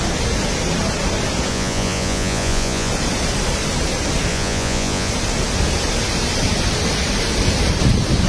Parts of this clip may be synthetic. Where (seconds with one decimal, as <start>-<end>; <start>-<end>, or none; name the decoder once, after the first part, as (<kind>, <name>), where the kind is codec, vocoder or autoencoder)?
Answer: 1.5-2.9 (vocoder, Vocos); 4.3-5.1